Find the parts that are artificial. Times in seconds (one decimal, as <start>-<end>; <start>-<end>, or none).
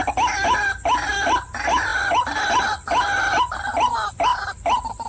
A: none